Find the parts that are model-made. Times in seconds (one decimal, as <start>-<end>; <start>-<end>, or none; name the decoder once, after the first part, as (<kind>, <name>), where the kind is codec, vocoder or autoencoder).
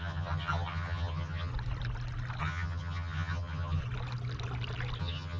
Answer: 0.0-1.5 (vocoder, HiFi-GAN); 2.4-3.8; 5.0-5.4